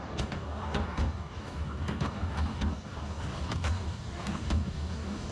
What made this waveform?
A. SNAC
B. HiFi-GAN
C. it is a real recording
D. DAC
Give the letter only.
D